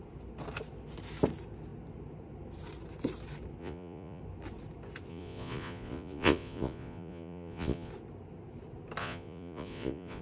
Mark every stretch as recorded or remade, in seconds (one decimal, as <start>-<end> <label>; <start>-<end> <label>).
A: 0.0-3.6 recorded; 3.6-4.2 remade; 4.2-5.1 recorded; 5.1-7.9 remade; 7.9-9.0 recorded; 9.0-10.2 remade